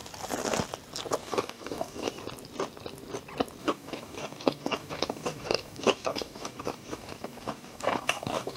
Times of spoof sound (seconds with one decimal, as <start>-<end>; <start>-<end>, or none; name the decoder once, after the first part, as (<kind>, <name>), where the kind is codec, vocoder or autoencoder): 1.2-2.1 (codec, DAC); 3.6-8.6